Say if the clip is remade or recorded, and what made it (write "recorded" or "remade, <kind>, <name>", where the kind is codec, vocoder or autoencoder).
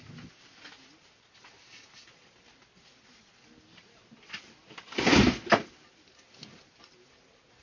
recorded